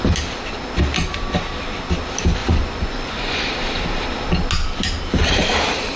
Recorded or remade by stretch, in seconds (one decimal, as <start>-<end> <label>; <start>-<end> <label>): 0.0-2.4 recorded; 2.4-3.4 remade; 3.4-6.0 recorded